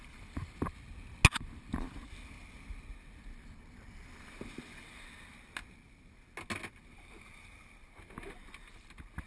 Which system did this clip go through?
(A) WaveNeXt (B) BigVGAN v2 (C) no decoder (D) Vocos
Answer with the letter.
C